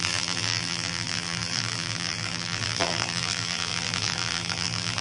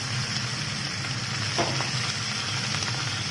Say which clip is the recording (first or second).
second